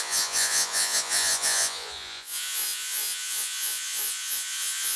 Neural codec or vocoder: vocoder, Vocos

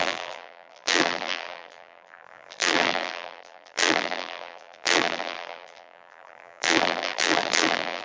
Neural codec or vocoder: vocoder, BigVGAN v2